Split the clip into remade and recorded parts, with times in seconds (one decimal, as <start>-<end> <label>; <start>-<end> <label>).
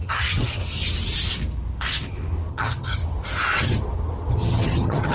0.0-0.6 remade; 0.6-2.5 recorded; 2.5-3.0 remade; 3.0-4.3 recorded; 4.3-5.1 remade